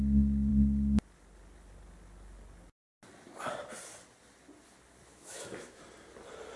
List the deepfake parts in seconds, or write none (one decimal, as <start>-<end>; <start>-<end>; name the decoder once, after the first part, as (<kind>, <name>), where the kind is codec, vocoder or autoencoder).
5.1-5.8 (autoencoder, DAC-VAE)